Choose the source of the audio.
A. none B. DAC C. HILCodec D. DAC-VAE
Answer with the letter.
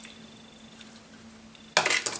A